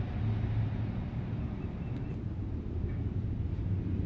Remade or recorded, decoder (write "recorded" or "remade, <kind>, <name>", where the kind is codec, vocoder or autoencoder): recorded